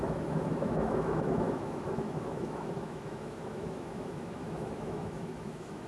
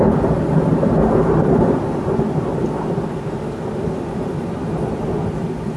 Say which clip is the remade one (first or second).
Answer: first